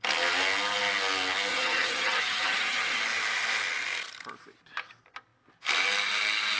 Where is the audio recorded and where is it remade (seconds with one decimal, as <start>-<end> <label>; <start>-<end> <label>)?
0.0-1.5 recorded; 1.5-3.0 remade; 3.0-6.6 recorded